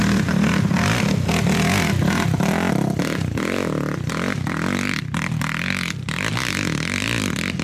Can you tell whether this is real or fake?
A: real